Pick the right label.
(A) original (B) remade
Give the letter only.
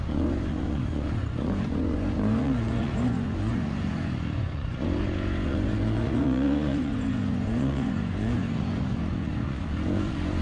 B